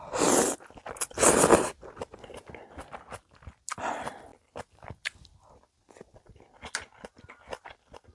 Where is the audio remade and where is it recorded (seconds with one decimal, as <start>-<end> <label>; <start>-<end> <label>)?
0.0-8.1 recorded